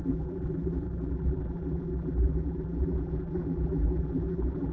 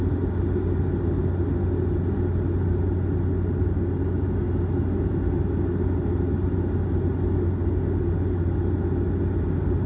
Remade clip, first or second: first